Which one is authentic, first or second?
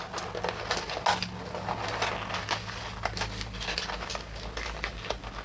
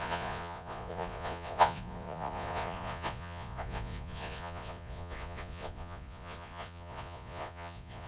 first